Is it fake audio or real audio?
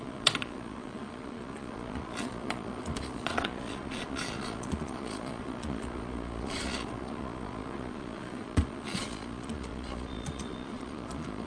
fake